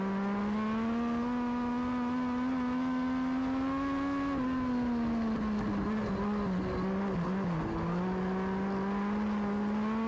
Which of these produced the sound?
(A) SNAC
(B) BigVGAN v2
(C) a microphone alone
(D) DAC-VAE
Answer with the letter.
C